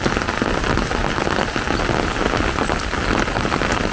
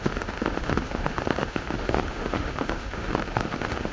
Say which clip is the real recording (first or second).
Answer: first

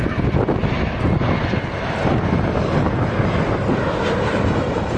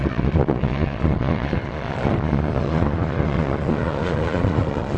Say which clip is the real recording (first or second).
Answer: first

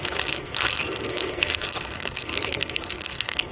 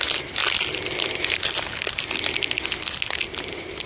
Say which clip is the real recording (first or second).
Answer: second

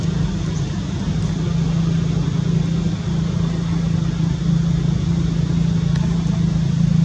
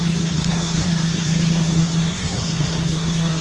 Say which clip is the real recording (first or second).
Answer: first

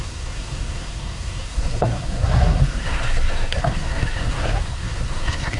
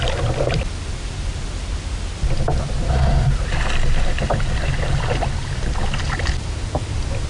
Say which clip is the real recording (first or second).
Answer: second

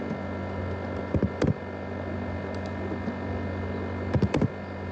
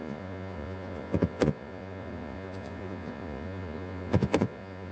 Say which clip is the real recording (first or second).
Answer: first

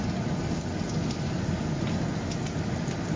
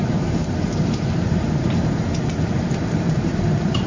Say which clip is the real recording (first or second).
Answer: first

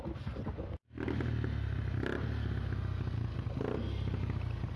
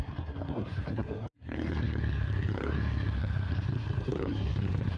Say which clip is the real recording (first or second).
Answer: first